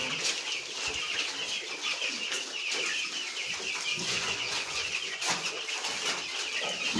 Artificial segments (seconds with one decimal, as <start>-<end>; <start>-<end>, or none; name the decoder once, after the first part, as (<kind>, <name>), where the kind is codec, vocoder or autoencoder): 3.9-5.6 (vocoder, Vocos)